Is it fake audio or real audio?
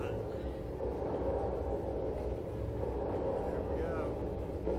real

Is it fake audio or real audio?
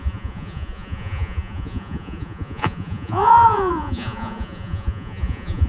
fake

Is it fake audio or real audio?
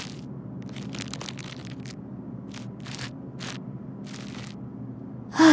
real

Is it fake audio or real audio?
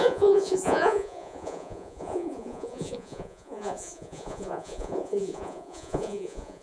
fake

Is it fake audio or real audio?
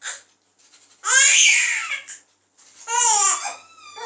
real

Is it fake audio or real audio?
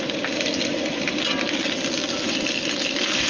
real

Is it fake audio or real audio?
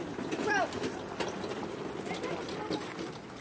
real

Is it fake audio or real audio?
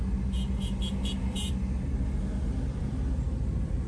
real